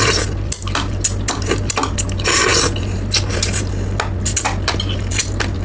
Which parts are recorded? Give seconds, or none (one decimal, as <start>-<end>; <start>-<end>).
0.0-5.6